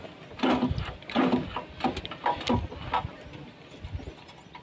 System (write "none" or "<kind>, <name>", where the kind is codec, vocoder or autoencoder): none